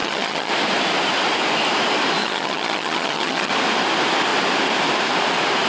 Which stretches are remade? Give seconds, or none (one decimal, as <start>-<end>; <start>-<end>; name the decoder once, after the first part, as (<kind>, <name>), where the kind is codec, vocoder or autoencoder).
0.0-0.5 (vocoder, HiFi-GAN); 2.2-3.5